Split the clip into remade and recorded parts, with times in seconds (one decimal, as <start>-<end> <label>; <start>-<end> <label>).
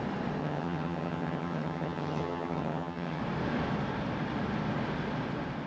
0.0-0.4 recorded; 0.4-3.2 remade; 3.2-5.7 recorded